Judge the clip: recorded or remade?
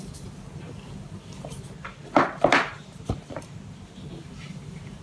recorded